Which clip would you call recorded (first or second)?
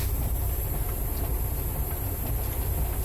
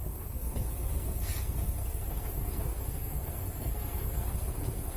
first